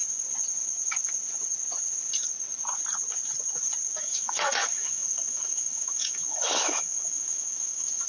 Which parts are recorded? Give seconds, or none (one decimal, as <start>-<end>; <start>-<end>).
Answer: 0.0-4.0